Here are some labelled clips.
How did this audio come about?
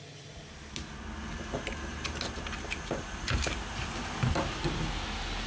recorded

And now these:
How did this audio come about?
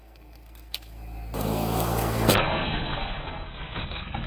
remade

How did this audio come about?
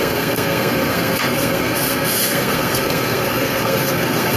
remade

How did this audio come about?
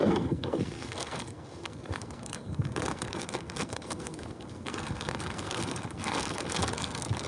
remade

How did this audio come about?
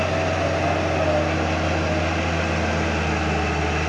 recorded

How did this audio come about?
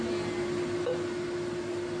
recorded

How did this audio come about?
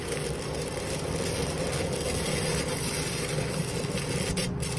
recorded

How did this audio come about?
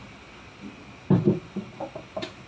recorded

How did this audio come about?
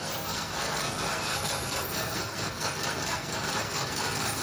remade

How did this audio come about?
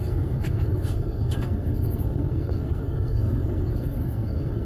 remade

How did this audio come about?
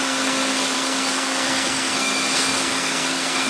remade